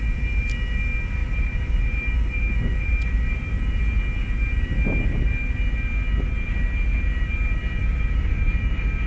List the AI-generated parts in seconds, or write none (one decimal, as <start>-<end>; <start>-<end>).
1.2-3.8; 7.8-8.7